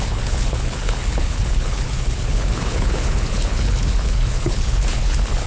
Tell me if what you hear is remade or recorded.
remade